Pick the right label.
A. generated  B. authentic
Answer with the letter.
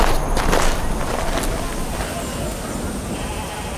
B